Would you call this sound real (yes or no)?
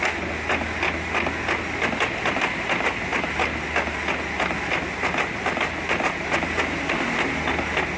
yes